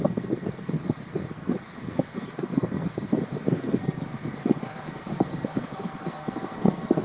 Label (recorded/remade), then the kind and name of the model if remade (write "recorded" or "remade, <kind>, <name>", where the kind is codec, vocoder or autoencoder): remade, codec, SNAC